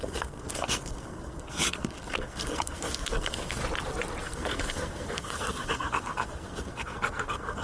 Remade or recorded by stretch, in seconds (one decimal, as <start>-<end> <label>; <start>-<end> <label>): 0.0-3.6 remade; 3.6-4.2 recorded; 4.2-7.6 remade